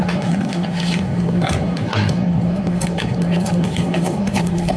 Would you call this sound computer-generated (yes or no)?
yes